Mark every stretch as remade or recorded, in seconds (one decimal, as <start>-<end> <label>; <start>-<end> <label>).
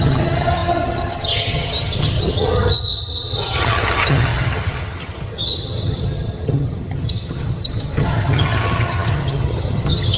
0.0-10.2 remade